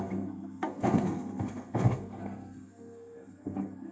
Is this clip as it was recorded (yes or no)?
no